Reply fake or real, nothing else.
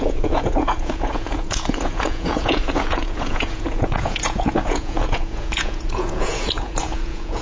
fake